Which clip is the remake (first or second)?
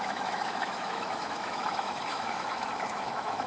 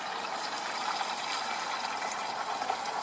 first